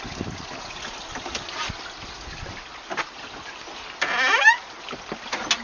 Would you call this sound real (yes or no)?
yes